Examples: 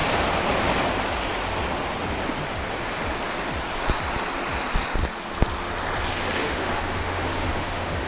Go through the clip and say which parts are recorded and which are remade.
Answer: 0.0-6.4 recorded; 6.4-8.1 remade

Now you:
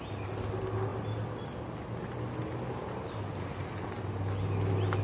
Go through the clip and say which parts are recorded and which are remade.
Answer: 0.0-5.0 recorded

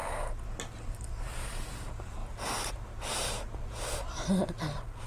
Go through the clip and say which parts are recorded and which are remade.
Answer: 0.0-0.8 recorded; 0.8-2.2 remade; 2.2-2.7 recorded; 2.7-5.1 remade

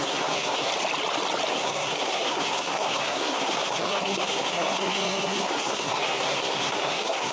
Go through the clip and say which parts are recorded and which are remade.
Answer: 0.0-0.7 remade; 0.7-1.5 recorded; 1.5-7.3 remade

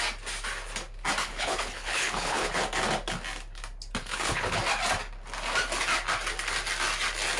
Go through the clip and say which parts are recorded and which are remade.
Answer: 0.0-1.2 recorded; 1.2-2.6 remade; 2.6-4.0 recorded; 4.0-4.6 remade; 4.6-7.4 recorded

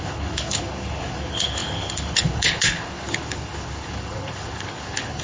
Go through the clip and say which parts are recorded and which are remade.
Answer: 0.0-5.2 remade

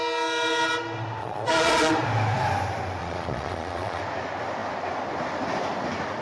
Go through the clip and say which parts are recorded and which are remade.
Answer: 0.0-1.2 recorded; 1.2-1.9 remade; 1.9-3.0 recorded; 3.0-4.0 remade; 4.0-6.2 recorded

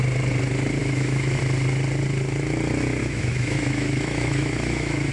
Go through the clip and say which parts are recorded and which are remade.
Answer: 0.0-0.8 recorded; 0.8-1.4 remade; 1.4-3.0 recorded; 3.0-5.1 remade